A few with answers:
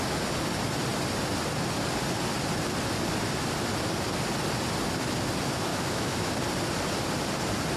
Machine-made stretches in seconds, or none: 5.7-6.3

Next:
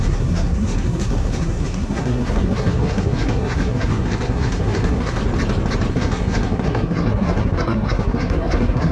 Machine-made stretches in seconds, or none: 0.0-5.2; 5.9-8.9

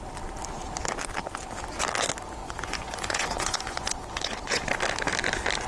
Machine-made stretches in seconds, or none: 2.4-4.6